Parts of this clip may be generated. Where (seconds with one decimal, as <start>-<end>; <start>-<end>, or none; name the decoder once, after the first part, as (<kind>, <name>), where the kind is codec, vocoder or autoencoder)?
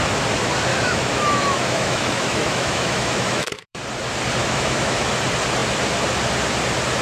0.7-3.8 (autoencoder, DAC-VAE); 4.4-5.1